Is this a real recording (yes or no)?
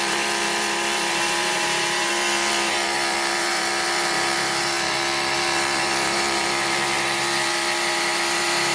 no